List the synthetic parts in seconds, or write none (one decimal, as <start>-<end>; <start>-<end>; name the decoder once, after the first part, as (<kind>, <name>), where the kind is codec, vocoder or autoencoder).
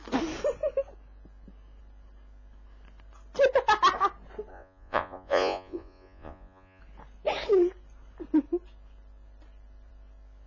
4.5-6.8 (vocoder, Vocos)